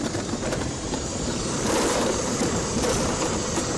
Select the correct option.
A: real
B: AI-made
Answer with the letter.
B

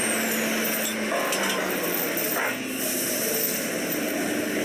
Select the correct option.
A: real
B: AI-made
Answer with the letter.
A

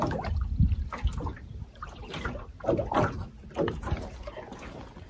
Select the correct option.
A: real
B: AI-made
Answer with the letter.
A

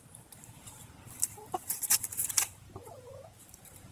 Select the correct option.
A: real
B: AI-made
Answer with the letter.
B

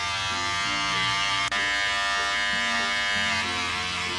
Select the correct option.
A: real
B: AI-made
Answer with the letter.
A